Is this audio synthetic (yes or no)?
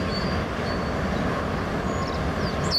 no